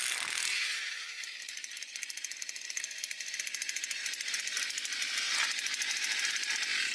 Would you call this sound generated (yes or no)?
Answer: no